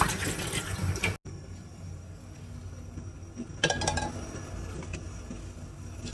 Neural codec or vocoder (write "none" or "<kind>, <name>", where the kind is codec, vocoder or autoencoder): none